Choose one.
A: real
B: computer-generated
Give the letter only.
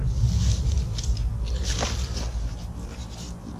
A